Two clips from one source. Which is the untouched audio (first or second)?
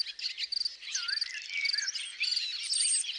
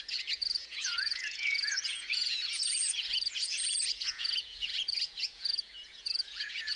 first